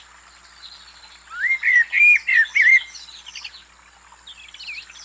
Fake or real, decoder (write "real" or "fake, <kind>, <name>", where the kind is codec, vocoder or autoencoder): real